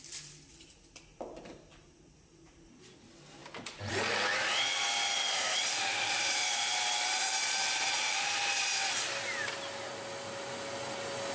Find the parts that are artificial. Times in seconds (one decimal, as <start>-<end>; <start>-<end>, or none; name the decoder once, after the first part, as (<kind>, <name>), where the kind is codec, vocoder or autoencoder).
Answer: 1.1-2.8 (vocoder, BigVGAN v2); 4.7-8.6